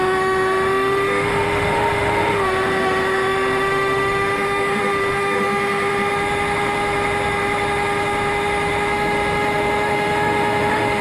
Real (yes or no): no